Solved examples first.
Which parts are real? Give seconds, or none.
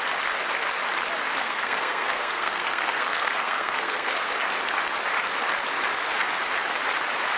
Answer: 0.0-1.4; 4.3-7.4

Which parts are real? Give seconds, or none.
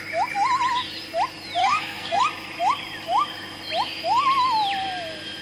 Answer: 0.0-1.6; 2.2-5.4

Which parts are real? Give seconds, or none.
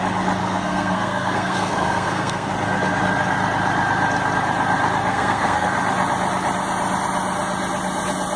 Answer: 0.0-0.4; 2.5-5.1; 5.7-8.4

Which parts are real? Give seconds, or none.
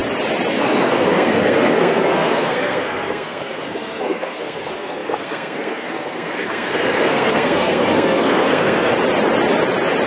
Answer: 0.0-0.5; 8.9-10.1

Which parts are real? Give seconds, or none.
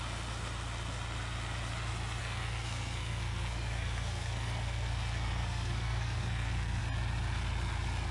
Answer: 0.0-2.2; 6.8-8.1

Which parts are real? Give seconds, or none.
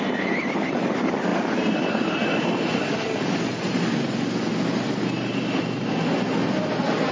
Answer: 0.0-7.1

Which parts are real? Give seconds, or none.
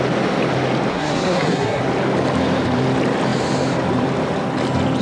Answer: 0.0-0.9; 1.8-5.0